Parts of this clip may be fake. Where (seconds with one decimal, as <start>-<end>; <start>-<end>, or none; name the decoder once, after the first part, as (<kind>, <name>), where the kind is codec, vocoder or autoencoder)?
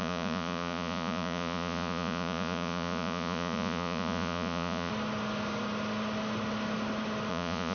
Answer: 0.0-4.9 (vocoder, Vocos); 7.3-7.7